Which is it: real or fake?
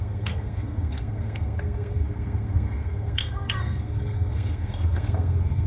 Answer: fake